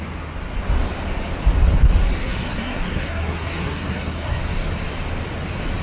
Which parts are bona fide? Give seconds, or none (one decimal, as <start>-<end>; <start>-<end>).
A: 0.0-2.2; 4.4-5.8

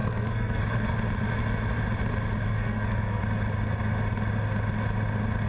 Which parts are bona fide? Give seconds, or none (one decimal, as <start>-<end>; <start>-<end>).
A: 0.6-2.5; 3.2-5.5

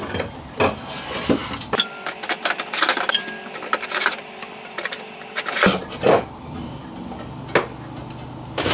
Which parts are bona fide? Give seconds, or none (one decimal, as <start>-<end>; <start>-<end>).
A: 0.0-8.7

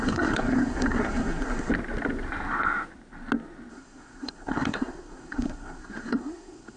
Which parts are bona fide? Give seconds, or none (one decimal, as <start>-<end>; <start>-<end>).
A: 1.7-3.7

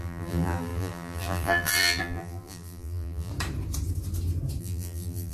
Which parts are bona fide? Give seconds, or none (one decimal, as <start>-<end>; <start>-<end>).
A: 3.3-4.6

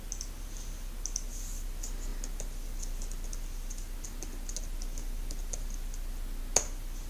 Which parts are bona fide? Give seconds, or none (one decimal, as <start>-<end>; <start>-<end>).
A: 0.0-7.1

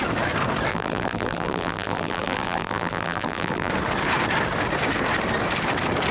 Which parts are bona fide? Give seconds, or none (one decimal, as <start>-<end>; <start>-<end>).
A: 0.0-0.7; 3.7-6.1

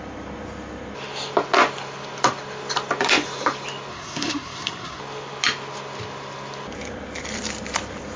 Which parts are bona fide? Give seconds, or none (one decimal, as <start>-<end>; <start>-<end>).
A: 0.0-3.9; 5.0-8.2